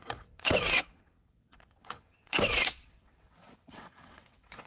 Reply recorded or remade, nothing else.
remade